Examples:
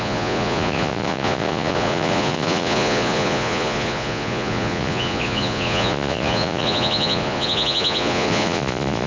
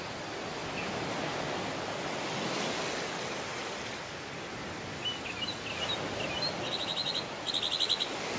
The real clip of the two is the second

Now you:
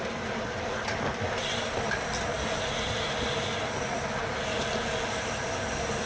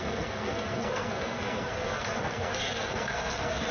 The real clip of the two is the first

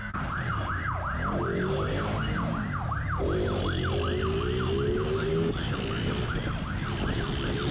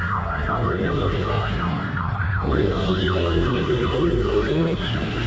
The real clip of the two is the first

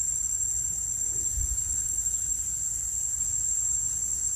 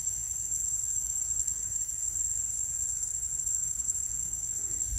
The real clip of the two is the first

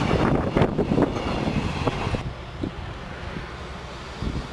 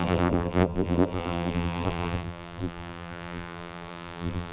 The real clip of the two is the first